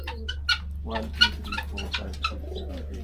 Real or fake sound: real